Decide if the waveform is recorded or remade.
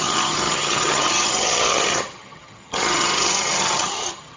remade